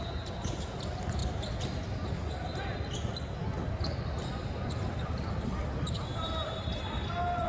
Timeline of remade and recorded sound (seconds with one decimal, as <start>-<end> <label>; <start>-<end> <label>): 0.0-7.5 recorded